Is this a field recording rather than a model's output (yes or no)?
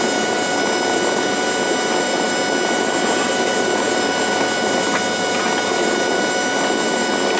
yes